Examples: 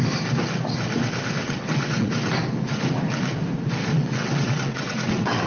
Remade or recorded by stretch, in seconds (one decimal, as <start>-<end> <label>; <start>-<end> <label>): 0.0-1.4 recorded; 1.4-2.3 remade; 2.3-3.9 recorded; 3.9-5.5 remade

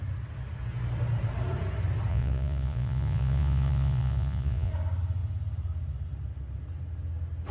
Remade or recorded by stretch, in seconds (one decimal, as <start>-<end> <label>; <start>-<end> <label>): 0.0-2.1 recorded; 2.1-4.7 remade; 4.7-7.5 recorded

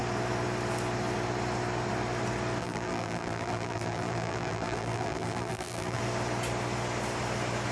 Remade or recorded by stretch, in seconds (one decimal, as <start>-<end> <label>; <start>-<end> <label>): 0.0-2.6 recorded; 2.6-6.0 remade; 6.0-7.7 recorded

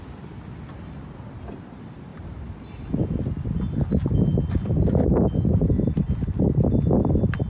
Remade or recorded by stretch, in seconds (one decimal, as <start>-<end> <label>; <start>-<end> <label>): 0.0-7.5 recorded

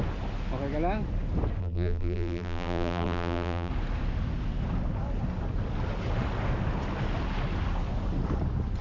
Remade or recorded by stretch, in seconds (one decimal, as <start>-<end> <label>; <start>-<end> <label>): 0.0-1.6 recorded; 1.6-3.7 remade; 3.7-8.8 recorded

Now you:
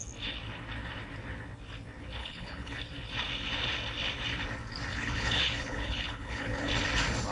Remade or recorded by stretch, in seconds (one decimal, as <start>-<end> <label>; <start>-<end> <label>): 0.0-2.2 recorded; 2.2-2.8 remade; 2.8-4.9 recorded; 4.9-6.7 remade; 6.7-7.3 recorded